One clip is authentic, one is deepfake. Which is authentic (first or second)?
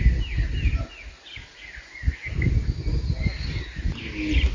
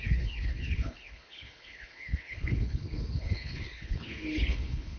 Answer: first